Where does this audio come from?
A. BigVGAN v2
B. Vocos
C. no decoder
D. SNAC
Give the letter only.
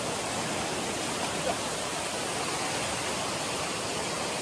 C